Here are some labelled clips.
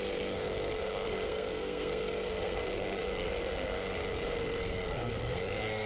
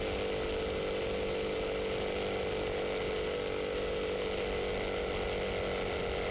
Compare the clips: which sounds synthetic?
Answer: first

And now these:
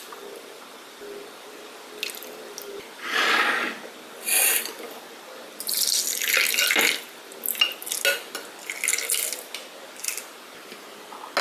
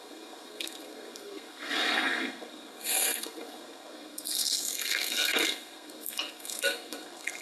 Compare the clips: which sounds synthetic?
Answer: second